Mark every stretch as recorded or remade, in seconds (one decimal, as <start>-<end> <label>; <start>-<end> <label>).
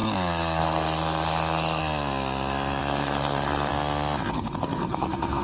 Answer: 0.0-0.6 recorded; 0.6-1.8 remade; 1.8-2.8 recorded; 2.8-3.7 remade; 3.7-4.3 recorded; 4.3-5.4 remade